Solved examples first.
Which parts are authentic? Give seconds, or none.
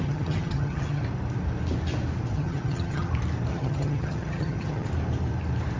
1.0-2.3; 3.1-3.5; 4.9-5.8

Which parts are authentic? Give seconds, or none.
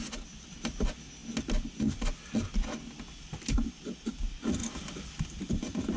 0.0-6.0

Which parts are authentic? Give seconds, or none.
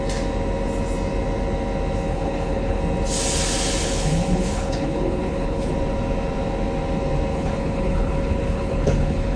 0.0-2.1; 2.8-3.8; 5.7-7.3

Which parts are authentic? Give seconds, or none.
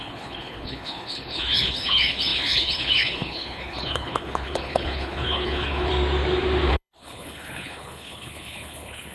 5.9-6.7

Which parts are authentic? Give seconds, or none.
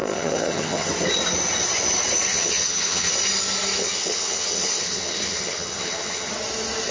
0.9-2.3; 3.1-3.8; 6.3-6.9